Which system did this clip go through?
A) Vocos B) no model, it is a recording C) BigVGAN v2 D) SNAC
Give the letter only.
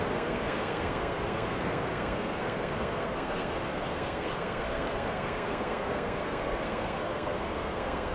D